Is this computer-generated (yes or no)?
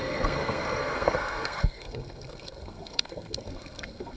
yes